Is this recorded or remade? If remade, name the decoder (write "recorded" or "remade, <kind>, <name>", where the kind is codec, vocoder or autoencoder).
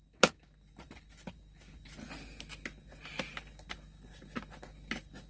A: recorded